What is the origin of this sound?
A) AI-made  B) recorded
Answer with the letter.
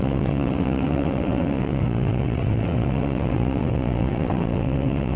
A